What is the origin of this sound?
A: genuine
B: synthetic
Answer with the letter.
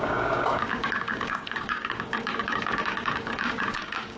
B